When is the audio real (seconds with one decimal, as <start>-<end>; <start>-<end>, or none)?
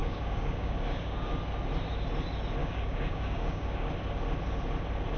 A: 1.3-2.6; 3.9-5.2